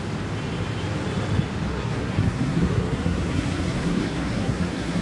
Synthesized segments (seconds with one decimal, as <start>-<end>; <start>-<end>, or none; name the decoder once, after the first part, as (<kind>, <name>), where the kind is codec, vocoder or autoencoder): 1.7-5.0 (codec, SNAC)